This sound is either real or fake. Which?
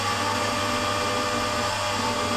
real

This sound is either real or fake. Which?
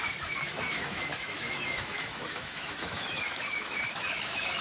fake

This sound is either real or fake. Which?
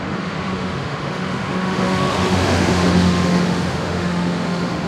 fake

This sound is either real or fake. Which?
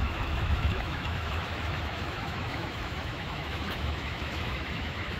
fake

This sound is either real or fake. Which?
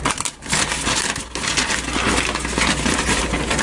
real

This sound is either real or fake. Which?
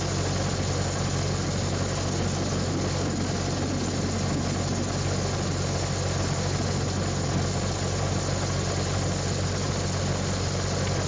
real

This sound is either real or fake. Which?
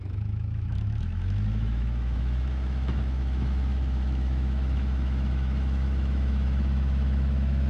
fake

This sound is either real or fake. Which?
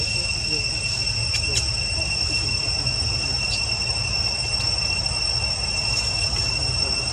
real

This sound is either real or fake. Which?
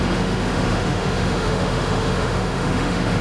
fake